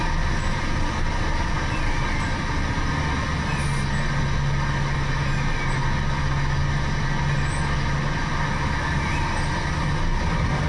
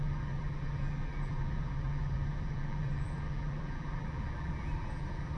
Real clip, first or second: first